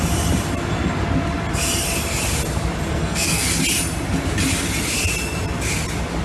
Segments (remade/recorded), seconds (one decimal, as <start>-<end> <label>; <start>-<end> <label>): 0.0-2.9 recorded; 2.9-3.5 remade; 3.5-6.2 recorded